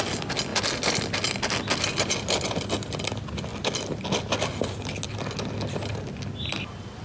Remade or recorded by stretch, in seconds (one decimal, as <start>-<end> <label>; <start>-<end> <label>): 0.0-7.0 recorded